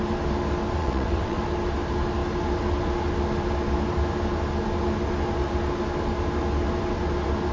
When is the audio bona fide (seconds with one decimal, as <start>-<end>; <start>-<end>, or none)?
0.0-0.8; 1.4-7.5